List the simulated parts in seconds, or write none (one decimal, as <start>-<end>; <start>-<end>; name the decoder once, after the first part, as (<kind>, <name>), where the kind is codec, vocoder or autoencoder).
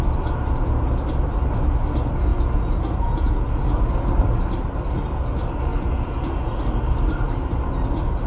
2.3-3.7 (vocoder, Vocos); 5.7-6.6